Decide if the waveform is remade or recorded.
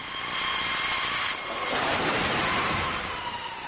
remade